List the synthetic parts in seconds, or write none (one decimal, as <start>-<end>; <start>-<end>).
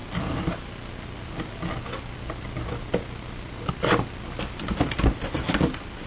none